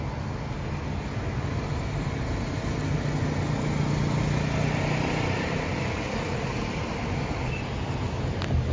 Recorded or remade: recorded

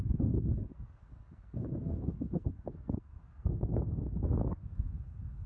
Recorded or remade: remade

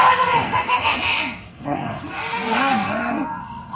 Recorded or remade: remade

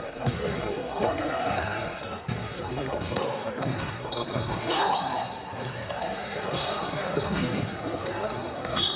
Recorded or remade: remade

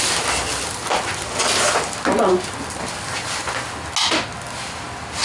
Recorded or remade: recorded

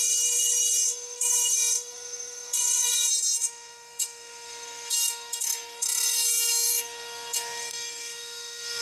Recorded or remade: remade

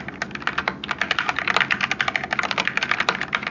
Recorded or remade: recorded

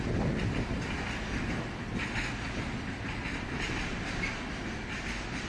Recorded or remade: recorded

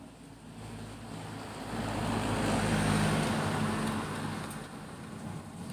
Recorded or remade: recorded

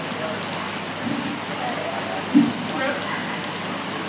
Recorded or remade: recorded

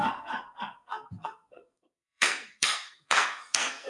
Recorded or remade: remade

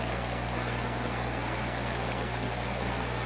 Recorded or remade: remade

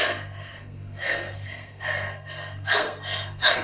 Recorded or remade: remade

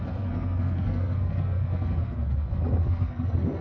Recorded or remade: remade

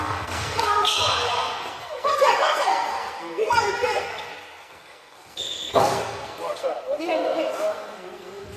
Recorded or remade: remade